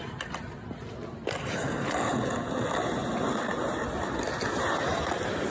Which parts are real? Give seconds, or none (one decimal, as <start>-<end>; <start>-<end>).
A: 0.0-0.9; 1.6-4.9